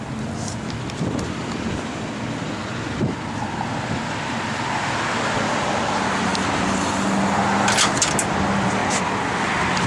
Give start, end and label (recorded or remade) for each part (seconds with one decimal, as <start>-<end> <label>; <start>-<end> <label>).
0.0-9.9 recorded